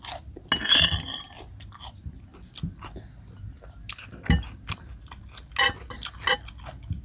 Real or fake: real